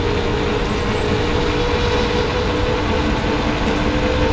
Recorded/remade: recorded